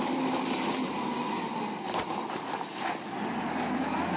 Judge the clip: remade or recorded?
recorded